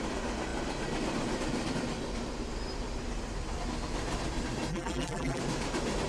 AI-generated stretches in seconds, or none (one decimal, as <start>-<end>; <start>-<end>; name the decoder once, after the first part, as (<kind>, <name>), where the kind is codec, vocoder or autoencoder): 4.7-5.4 (vocoder, BigVGAN v2)